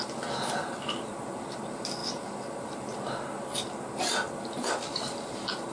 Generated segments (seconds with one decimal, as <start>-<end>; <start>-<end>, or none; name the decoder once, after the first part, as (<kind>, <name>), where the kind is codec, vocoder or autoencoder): none